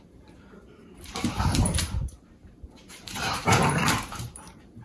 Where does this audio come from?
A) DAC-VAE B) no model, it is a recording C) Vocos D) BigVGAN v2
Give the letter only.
D